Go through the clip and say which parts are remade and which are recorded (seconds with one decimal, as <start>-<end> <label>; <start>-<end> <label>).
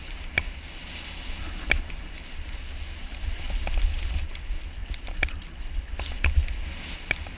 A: 0.0-7.4 recorded